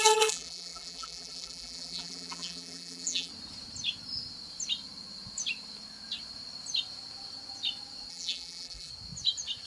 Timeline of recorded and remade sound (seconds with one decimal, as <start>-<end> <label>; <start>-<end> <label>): 0.0-3.3 remade; 3.3-8.1 recorded; 8.1-8.9 remade; 8.9-9.7 recorded